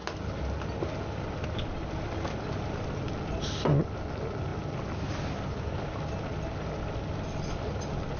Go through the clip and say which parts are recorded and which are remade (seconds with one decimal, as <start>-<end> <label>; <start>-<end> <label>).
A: 0.0-8.2 recorded